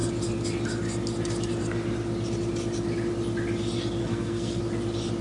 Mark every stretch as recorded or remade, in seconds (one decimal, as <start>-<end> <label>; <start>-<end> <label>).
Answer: 0.0-4.0 recorded; 4.0-4.6 remade; 4.6-5.2 recorded